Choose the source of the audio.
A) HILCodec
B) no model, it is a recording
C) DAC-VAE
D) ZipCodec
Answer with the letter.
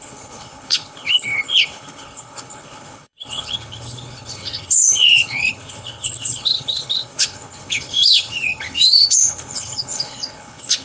A